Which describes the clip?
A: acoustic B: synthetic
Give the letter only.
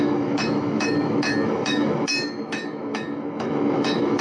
B